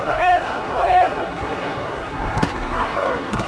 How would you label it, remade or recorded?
remade